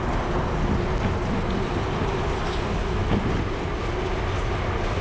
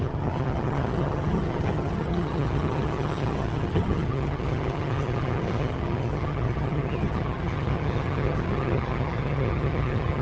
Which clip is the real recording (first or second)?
first